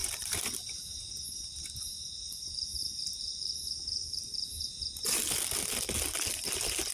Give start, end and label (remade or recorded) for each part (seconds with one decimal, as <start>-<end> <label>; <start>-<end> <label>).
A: 0.0-0.5 remade; 0.5-2.8 recorded; 2.8-4.5 remade; 4.5-6.9 recorded